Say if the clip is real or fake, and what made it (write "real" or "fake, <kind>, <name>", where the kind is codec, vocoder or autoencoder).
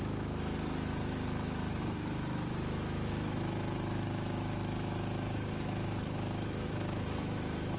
fake, autoencoder, DAC-VAE